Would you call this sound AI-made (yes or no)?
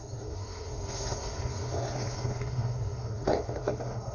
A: yes